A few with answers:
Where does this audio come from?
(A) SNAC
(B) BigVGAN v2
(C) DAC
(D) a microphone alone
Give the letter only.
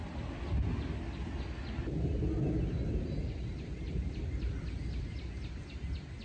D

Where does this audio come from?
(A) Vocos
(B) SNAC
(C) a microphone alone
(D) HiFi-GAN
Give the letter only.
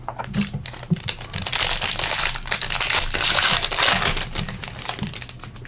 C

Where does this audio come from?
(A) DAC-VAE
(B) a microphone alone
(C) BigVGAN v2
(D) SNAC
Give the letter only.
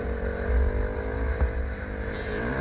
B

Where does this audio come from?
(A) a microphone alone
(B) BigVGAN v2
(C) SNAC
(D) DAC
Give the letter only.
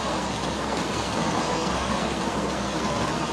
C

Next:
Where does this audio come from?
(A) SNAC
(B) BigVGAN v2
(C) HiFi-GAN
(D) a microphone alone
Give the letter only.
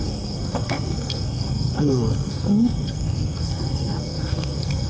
A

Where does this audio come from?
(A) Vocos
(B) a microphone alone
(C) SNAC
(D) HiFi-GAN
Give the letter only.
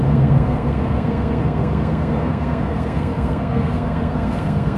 C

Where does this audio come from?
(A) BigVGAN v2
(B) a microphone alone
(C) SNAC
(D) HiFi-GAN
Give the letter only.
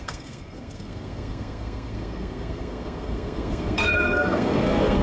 C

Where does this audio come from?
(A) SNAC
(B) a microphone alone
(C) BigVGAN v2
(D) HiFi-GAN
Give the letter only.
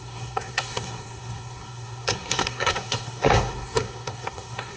A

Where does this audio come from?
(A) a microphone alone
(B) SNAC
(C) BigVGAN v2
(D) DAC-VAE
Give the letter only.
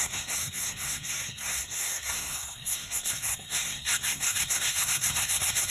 B